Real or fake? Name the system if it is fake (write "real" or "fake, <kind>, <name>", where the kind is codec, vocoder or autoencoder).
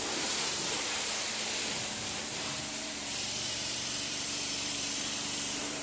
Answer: fake, vocoder, BigVGAN v2